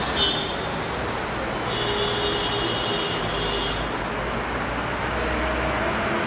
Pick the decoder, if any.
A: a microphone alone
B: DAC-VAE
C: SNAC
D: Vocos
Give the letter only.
A